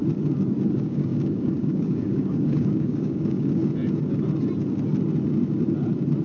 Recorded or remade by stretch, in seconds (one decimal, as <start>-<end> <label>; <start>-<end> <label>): 0.0-0.7 recorded; 0.7-3.6 remade; 3.6-6.2 recorded